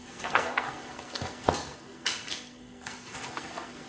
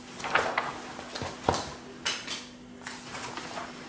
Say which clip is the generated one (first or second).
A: first